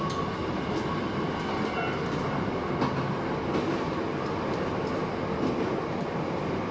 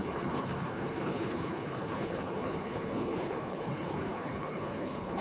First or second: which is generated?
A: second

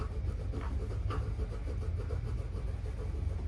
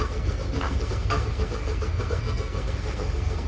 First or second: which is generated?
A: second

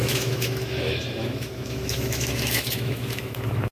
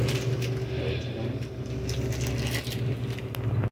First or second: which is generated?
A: first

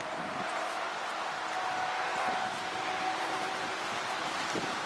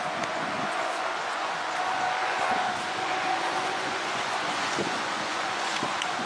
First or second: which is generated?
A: second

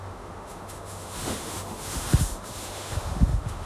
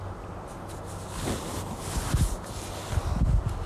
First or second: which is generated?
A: first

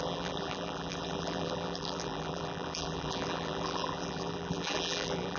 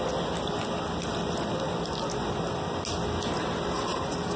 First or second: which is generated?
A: first